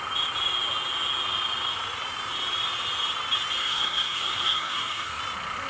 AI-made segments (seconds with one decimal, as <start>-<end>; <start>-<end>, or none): 3.6-5.2

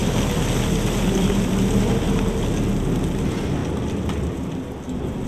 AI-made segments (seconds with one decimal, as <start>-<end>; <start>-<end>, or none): none

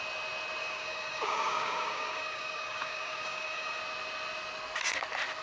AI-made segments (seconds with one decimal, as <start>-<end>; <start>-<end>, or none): 0.6-3.8

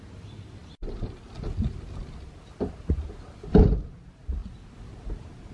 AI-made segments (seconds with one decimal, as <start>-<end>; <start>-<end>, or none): none